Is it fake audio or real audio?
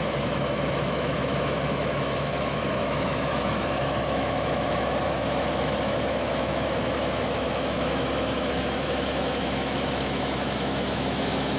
fake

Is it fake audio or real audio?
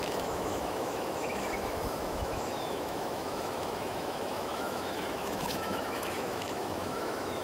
fake